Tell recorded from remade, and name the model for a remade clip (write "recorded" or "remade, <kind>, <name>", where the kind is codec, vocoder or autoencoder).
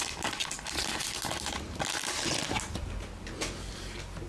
recorded